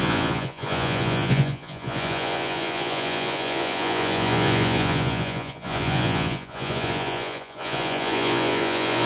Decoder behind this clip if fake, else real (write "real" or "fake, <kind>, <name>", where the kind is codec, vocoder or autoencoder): fake, vocoder, Vocos